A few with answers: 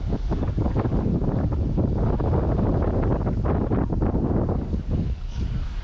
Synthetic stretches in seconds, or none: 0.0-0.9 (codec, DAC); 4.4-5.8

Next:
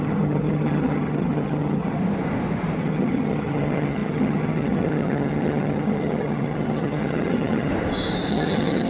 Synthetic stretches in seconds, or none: 0.0-2.0 (vocoder, HiFi-GAN); 2.8-7.7; 8.3-8.9

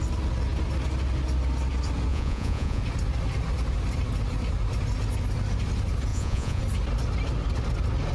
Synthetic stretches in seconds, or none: 2.1-2.8 (vocoder, Vocos); 6.1-6.6